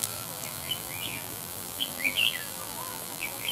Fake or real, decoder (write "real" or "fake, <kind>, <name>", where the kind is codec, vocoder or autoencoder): fake, vocoder, BigVGAN v2